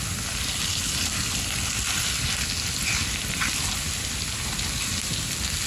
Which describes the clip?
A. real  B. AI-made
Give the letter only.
A